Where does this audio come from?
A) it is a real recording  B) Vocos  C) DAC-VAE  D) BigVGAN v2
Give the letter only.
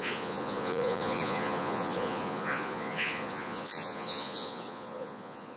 B